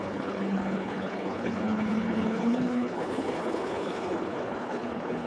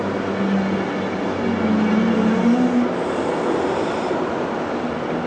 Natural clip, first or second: second